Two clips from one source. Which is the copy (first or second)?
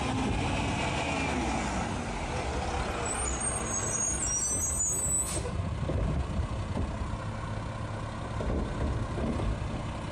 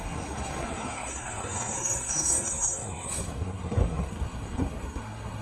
second